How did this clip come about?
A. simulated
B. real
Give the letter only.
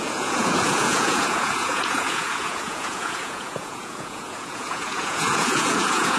A